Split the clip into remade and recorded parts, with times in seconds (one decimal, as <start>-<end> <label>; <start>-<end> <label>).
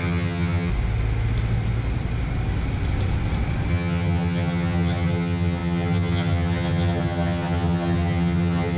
0.0-0.7 remade; 0.7-3.7 recorded; 3.7-8.8 remade